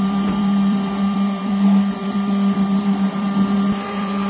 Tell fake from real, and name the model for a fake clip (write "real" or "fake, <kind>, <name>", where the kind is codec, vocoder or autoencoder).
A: fake, vocoder, BigVGAN v2